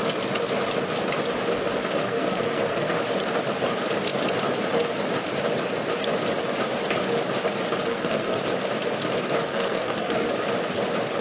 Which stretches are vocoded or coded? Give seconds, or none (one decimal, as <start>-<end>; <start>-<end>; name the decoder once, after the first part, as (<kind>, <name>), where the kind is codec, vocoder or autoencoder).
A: 2.0-3.0 (codec, SNAC); 7.9-8.4; 9.5-10.3